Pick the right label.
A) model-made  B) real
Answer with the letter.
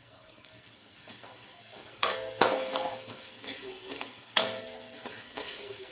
A